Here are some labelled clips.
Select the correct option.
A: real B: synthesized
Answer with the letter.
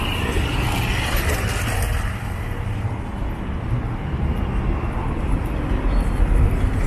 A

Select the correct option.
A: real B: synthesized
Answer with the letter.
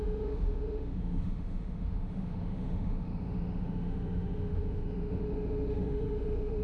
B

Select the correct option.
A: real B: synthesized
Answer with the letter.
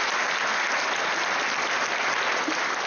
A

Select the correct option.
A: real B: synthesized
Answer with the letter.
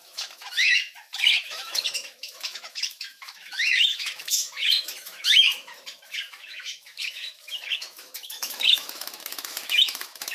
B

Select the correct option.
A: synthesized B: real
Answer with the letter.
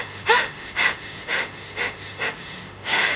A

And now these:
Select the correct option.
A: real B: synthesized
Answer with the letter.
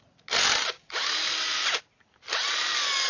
A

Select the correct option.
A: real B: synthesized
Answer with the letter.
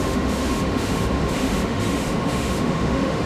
B